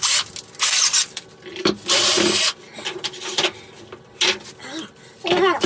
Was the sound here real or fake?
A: real